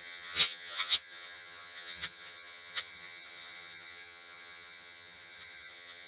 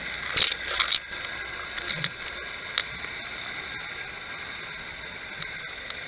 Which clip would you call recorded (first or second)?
second